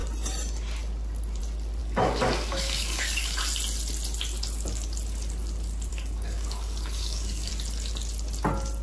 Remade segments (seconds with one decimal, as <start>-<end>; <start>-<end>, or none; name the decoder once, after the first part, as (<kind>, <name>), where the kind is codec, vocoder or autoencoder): 1.8-3.4 (codec, DAC); 5.9-7.5